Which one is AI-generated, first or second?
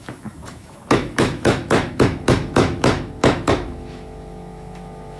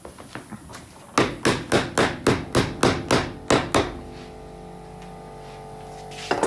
first